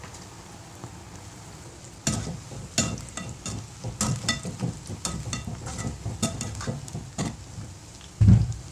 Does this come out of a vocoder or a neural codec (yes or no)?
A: no